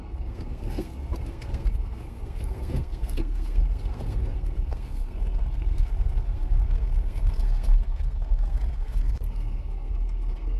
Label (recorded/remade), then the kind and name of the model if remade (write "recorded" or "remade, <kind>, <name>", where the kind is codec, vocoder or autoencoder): remade, codec, SNAC